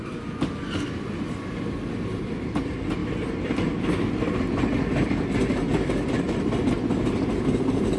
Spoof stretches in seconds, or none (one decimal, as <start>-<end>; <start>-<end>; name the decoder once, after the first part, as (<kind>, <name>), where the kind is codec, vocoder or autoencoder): none